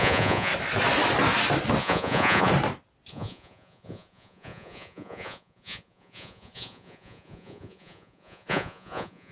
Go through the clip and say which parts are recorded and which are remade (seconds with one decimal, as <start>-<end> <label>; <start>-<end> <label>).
0.0-0.5 remade; 0.5-1.8 recorded; 1.8-2.5 remade; 2.5-3.1 recorded; 3.1-9.3 remade